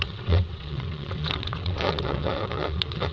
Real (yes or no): no